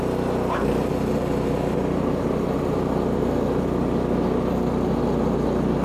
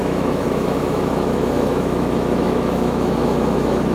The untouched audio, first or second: first